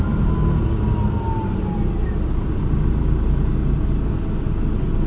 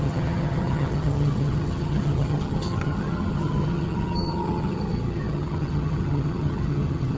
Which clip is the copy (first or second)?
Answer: second